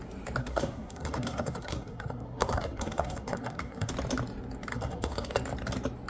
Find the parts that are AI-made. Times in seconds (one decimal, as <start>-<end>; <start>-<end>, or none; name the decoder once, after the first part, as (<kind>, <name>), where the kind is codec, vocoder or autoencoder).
0.4-3.9 (codec, SNAC); 4.7-5.3